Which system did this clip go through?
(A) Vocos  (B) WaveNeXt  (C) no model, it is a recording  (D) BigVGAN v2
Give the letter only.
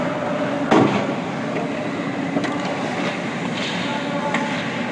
C